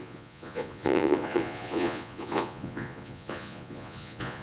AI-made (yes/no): yes